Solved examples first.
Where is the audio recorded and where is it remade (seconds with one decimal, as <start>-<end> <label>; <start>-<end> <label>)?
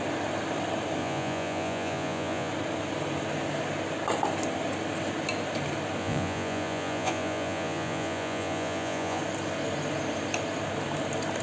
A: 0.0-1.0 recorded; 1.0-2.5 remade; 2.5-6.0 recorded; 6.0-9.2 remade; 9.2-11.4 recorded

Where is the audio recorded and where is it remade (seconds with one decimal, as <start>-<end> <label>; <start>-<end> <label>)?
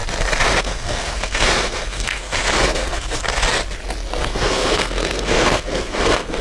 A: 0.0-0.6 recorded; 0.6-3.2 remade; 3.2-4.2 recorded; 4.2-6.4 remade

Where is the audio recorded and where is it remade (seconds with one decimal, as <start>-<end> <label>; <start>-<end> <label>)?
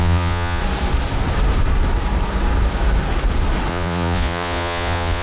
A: 0.0-0.6 remade; 0.6-3.7 recorded; 3.7-5.2 remade